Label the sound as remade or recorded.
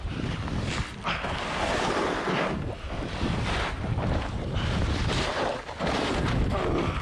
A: recorded